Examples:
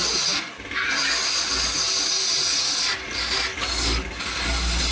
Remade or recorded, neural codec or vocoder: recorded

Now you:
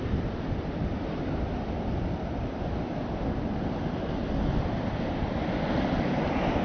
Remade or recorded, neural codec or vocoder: recorded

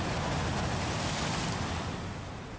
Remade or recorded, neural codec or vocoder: recorded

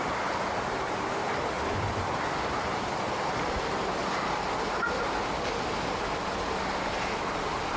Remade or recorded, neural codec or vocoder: recorded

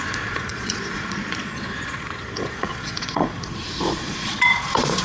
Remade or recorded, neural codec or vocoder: remade, vocoder, Vocos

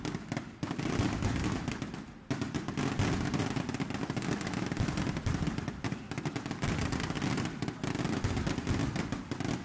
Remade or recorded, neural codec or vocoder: recorded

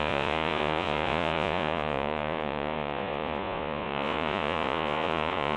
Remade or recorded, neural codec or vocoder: remade, vocoder, Vocos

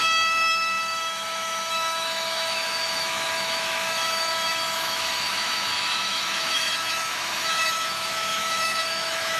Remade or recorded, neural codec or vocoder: remade, autoencoder, DAC-VAE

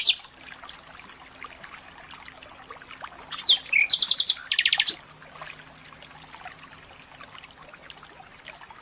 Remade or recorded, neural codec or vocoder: recorded